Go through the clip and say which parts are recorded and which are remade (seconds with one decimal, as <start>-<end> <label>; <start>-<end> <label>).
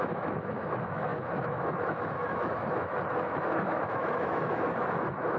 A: 0.0-5.4 remade